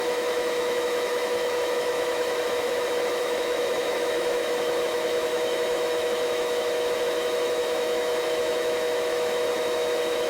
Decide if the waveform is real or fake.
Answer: fake